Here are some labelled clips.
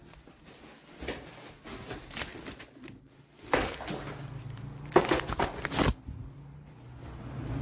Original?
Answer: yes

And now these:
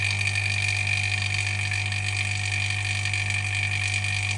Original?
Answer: yes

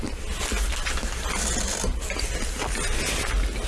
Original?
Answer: yes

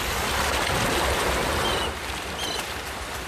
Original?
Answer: yes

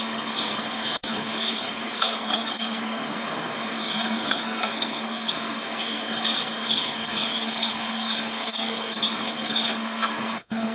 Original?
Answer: no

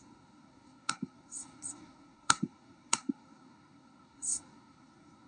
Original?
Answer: no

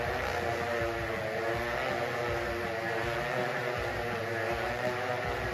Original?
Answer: yes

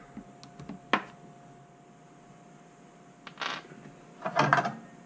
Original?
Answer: yes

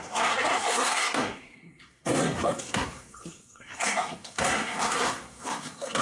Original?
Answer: no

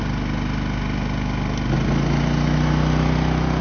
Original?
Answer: yes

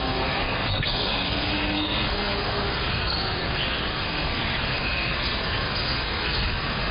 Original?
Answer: no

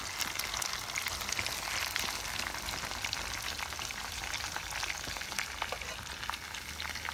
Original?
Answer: yes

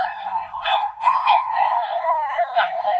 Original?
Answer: no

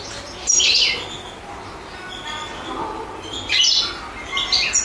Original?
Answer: yes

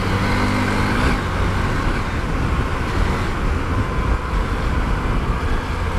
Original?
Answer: yes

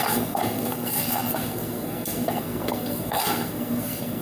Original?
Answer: no